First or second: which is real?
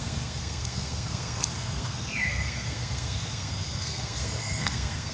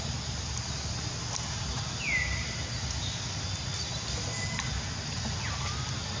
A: second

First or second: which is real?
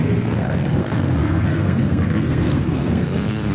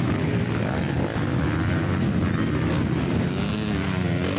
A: second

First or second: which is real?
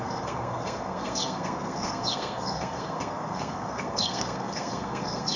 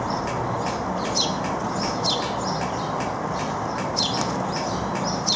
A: second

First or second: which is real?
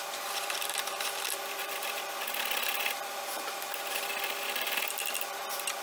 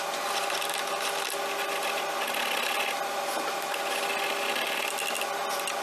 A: second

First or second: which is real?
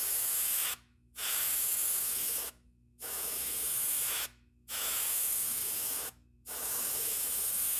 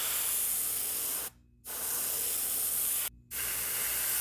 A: second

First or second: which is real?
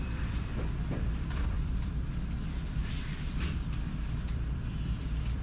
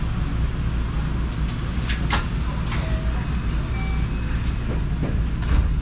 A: second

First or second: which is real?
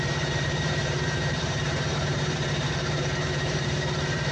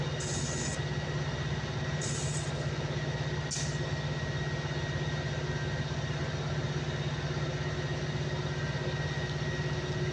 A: second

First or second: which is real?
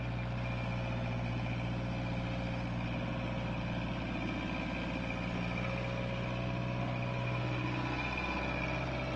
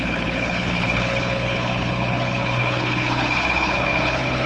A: first